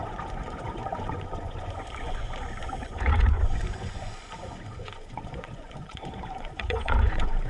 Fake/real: fake